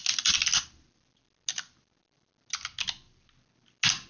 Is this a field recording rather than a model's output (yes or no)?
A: yes